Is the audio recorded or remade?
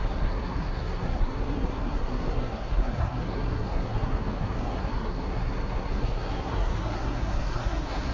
remade